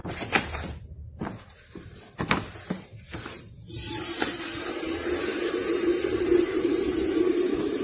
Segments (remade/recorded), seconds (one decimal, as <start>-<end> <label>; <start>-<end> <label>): 0.0-2.5 recorded; 2.5-2.9 remade; 2.9-4.7 recorded; 4.7-7.8 remade